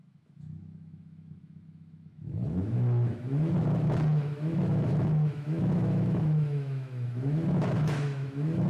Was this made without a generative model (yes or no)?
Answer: no